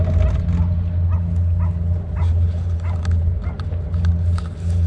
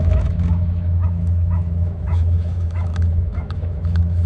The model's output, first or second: second